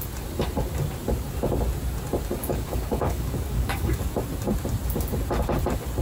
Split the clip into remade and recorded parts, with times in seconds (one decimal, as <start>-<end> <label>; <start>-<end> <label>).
0.0-2.4 recorded; 2.4-4.1 remade; 4.1-6.0 recorded